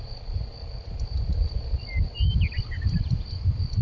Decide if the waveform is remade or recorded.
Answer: recorded